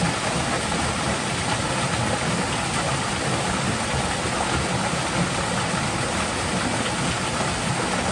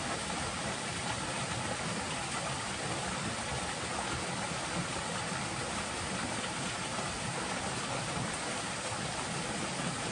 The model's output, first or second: second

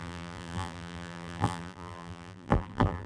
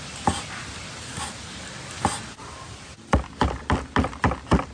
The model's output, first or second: first